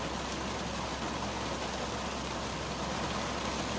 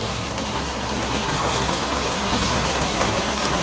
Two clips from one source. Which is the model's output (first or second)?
second